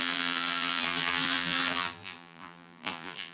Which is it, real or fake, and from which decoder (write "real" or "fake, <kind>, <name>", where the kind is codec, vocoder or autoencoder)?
fake, vocoder, BigVGAN v2